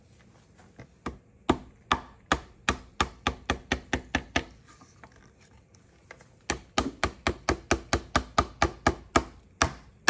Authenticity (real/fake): real